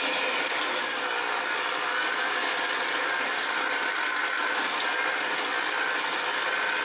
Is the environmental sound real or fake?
real